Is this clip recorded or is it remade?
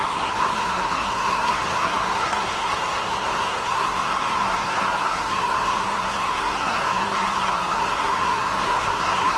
remade